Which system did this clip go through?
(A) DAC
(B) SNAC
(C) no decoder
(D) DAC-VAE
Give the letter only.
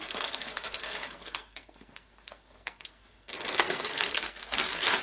B